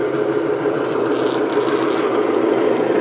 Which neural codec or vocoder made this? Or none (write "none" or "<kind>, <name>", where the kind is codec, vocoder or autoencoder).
none